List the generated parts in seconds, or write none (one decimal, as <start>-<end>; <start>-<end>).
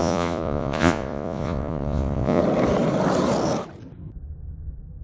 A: 0.0-2.4